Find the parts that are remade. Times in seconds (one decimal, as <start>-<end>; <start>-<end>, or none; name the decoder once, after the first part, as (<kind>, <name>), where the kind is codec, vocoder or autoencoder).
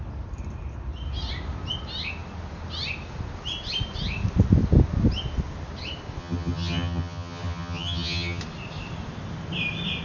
6.2-8.4 (vocoder, HiFi-GAN)